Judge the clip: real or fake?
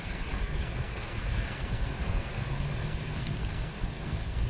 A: fake